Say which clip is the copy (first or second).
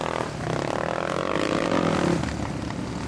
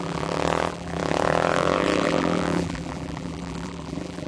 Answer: second